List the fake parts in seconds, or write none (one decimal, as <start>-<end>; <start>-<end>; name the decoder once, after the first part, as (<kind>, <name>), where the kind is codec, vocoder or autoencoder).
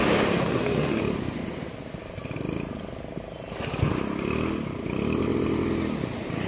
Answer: 0.4-1.0 (codec, SNAC)